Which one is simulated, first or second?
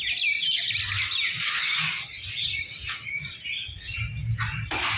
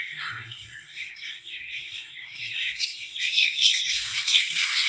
second